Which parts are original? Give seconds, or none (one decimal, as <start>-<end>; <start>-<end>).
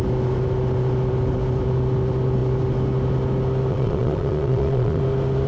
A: 0.0-3.7; 5.0-5.5